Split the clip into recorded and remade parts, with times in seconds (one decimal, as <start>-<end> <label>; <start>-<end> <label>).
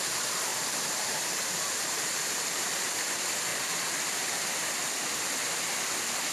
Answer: 0.0-0.5 recorded; 0.5-2.7 remade; 2.7-3.5 recorded; 3.5-4.7 remade; 4.7-6.3 recorded